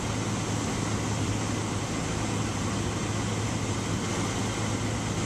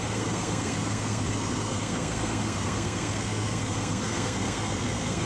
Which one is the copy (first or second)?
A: second